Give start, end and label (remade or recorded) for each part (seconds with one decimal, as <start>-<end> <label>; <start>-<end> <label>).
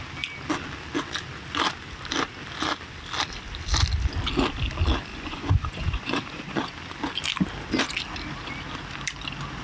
0.0-5.1 recorded; 5.1-6.8 remade; 6.8-9.6 recorded